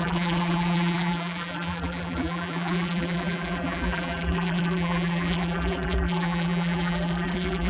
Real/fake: fake